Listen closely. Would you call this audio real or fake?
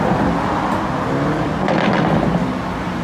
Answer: real